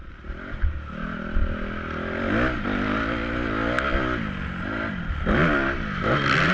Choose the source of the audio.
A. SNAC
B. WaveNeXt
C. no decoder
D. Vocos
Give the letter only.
C